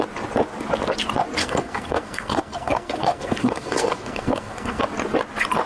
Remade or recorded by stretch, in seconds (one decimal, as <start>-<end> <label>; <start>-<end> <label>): 0.0-1.4 recorded; 1.4-4.8 remade; 4.8-5.7 recorded